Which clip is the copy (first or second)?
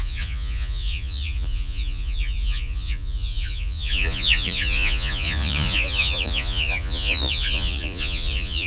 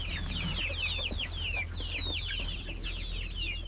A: first